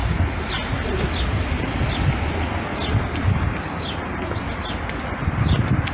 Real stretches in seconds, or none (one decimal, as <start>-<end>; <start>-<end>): 0.0-5.9